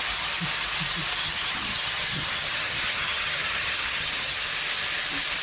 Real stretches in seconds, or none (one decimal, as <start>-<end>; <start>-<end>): 0.0-1.2; 4.4-5.4